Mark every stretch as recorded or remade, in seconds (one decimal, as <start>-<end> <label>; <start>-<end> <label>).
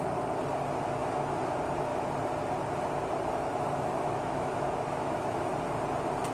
0.0-3.5 recorded; 3.5-5.5 remade; 5.5-6.3 recorded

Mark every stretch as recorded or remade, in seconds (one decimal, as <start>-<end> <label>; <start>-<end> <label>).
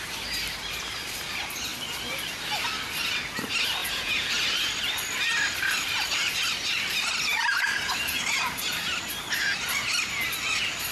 0.0-3.8 recorded; 3.8-4.3 remade; 4.3-10.9 recorded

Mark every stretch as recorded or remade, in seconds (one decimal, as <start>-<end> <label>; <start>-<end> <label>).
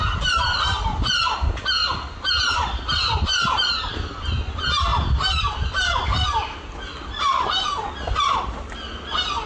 0.0-9.5 recorded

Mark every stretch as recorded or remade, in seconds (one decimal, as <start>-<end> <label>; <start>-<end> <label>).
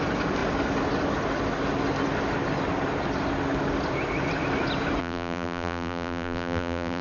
0.0-5.0 recorded; 5.0-7.0 remade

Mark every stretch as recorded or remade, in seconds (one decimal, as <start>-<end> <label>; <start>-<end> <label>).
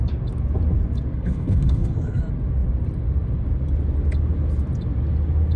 0.0-1.1 recorded; 1.1-2.2 remade; 2.2-5.6 recorded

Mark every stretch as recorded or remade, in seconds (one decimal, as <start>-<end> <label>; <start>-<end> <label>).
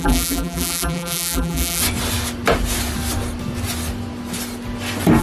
0.0-1.8 remade; 1.8-5.2 recorded